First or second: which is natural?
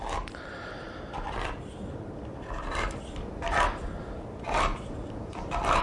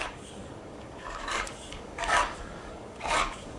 first